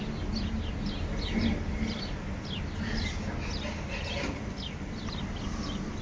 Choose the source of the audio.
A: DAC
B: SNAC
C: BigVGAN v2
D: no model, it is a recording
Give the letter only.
D